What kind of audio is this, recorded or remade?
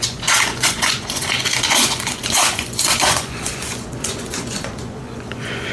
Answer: remade